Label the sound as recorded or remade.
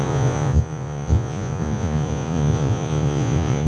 remade